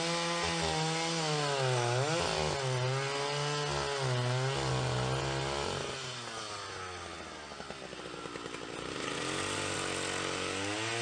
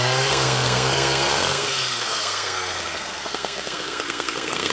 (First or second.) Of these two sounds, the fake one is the second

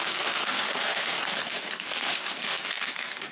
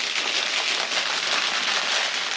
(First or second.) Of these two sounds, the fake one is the first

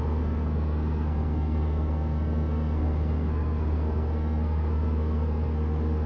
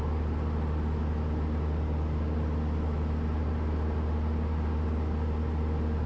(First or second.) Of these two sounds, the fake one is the first